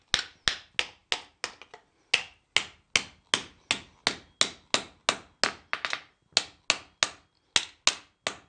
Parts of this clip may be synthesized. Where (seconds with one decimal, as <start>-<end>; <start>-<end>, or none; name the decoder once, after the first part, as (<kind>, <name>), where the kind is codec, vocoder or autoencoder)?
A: none